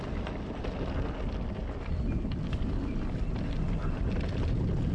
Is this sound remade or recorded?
recorded